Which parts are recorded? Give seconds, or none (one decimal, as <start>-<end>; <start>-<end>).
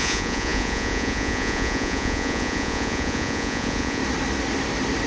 4.0-5.1